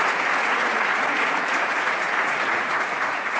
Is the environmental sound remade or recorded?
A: remade